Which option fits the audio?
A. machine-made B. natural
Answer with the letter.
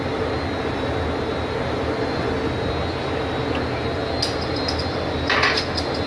B